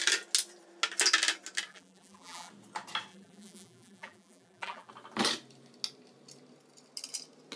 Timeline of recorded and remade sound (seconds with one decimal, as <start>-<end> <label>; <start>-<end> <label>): 0.0-1.7 recorded; 1.7-2.5 remade; 2.5-3.1 recorded; 3.1-4.9 remade; 4.9-7.6 recorded